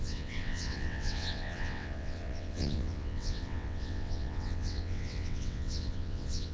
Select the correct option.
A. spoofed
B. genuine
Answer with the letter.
A